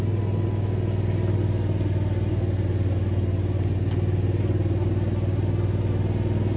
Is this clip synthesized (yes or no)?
no